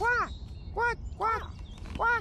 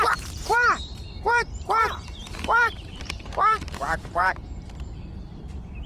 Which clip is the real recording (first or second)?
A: first